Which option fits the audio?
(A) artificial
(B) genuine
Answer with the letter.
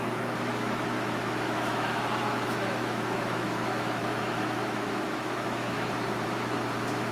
A